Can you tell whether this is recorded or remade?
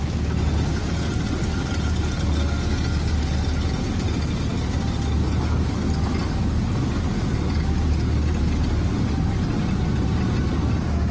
recorded